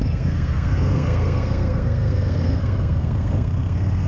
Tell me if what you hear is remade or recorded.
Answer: remade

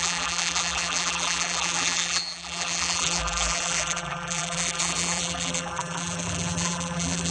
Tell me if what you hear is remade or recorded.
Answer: remade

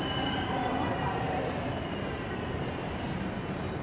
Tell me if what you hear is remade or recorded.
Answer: remade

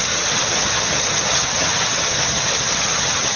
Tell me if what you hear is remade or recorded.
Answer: remade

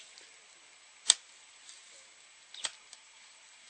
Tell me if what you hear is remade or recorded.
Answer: recorded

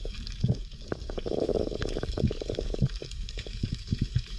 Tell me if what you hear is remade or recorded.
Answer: remade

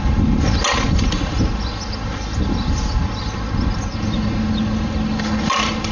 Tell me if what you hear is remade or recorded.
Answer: recorded